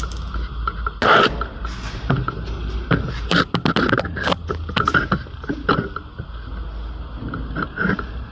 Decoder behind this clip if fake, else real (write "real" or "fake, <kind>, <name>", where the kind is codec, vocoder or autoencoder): real